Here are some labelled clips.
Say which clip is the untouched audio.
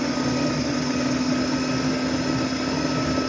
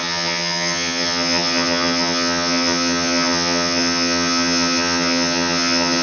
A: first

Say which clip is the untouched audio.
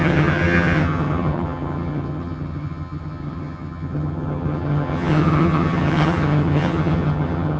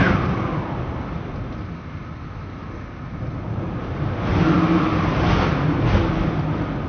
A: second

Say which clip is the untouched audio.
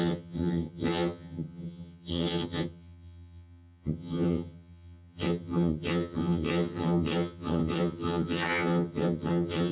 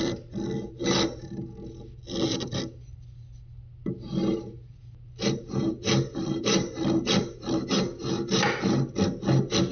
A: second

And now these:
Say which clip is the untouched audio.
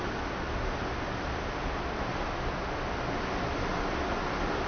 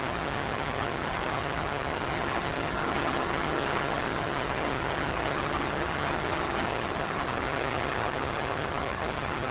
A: first